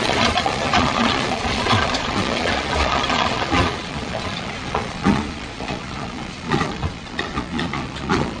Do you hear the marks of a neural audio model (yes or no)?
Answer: yes